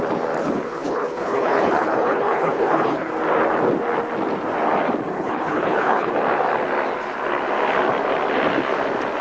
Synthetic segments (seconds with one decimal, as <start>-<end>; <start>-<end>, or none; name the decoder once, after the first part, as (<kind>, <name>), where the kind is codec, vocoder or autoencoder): 0.4-3.1 (codec, HILCodec); 5.1-6.1